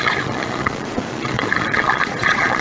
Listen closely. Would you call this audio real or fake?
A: fake